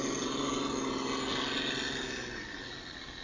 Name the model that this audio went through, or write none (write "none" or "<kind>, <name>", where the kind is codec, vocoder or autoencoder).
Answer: none